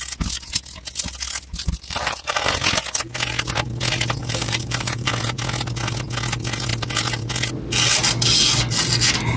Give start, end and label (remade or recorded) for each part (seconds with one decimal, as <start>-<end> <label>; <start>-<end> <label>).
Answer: 0.0-1.6 recorded; 1.6-2.5 remade; 2.5-4.2 recorded; 4.2-5.1 remade; 5.1-9.4 recorded